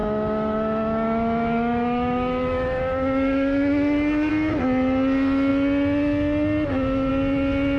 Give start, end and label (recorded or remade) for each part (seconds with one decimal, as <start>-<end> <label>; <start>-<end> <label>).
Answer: 0.0-4.3 remade; 4.3-7.8 recorded